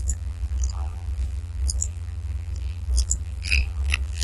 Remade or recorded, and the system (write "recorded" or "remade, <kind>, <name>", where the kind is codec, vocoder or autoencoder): remade, vocoder, BigVGAN v2